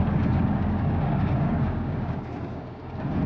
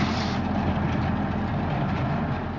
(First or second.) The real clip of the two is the second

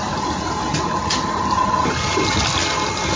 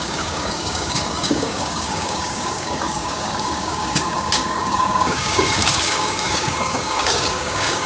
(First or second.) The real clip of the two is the first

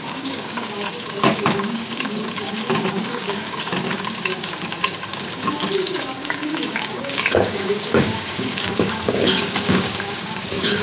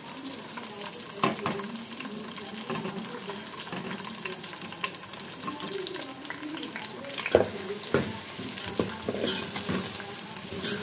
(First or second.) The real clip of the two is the second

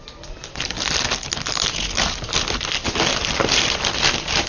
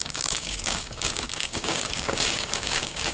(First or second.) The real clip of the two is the first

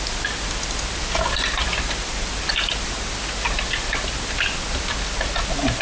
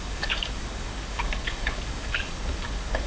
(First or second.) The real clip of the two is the first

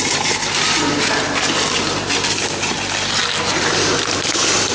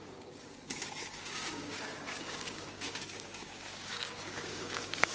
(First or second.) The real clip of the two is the first